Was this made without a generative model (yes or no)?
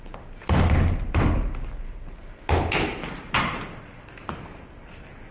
yes